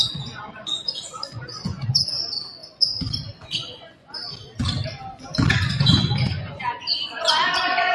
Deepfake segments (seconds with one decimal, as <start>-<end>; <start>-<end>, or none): 0.0-2.6; 3.4-4.2; 5.5-7.9